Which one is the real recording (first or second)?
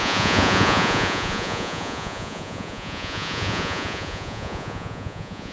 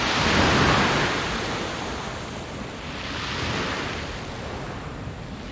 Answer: second